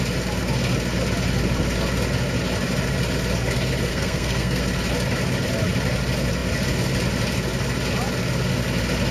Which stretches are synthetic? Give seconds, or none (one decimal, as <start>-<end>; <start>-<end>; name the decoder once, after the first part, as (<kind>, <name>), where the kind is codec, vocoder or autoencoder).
3.9-4.6 (codec, SNAC)